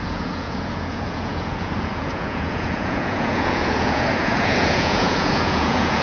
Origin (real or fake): fake